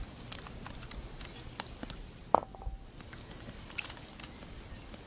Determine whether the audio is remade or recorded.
recorded